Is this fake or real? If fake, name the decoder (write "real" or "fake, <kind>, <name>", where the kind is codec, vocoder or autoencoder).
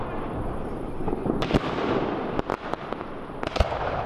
real